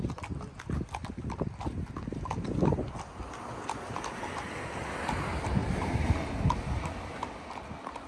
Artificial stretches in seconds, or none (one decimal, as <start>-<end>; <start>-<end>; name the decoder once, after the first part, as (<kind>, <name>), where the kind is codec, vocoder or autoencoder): 5.6-6.2 (vocoder, BigVGAN v2)